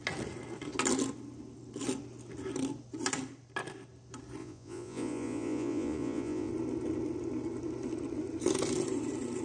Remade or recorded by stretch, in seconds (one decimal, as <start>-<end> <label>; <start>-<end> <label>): 0.0-4.4 recorded; 4.4-6.5 remade; 6.5-9.4 recorded